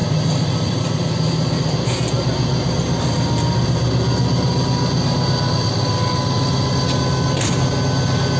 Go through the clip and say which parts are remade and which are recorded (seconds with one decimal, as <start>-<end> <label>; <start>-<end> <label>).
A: 0.0-1.0 remade; 1.0-8.4 recorded